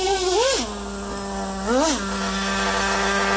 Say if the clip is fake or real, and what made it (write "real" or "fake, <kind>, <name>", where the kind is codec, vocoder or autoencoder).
real